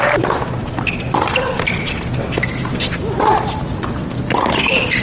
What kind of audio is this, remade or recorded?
recorded